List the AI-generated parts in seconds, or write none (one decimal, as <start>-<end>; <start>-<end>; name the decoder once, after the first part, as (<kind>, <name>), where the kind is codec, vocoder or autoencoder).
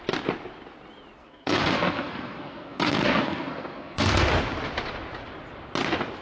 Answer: 1.2-4.3 (codec, SNAC)